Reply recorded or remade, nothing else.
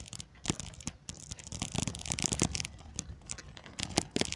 recorded